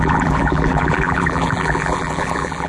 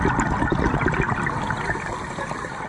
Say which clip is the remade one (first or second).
first